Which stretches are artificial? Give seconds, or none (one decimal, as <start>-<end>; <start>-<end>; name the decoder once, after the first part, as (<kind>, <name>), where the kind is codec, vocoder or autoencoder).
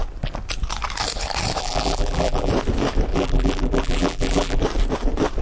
1.6-2.5 (vocoder, BigVGAN v2); 3.1-4.6